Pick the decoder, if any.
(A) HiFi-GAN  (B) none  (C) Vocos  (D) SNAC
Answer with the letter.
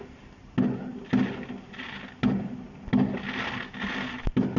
B